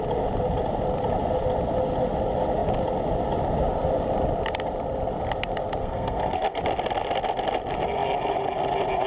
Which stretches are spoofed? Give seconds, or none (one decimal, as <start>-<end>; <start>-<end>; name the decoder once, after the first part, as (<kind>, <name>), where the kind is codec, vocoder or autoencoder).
5.8-6.6 (codec, SNAC)